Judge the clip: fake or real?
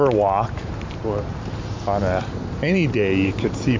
fake